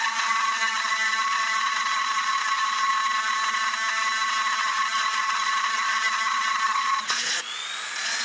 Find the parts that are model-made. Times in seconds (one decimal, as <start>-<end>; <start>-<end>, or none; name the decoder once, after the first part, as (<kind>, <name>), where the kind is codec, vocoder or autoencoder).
0.0-2.9 (vocoder, Vocos); 4.6-8.2